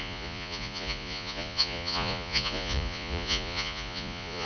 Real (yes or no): no